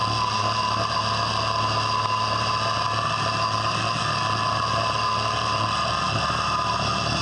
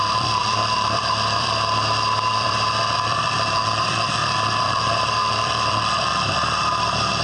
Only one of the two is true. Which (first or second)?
first